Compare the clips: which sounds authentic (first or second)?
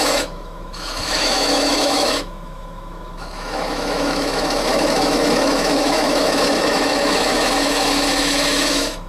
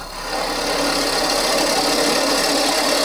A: second